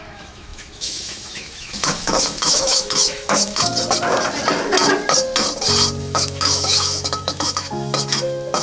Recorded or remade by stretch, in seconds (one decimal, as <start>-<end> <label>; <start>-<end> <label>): 0.0-3.7 remade; 3.7-6.0 recorded; 6.0-8.6 remade